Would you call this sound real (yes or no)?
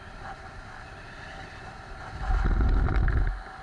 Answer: yes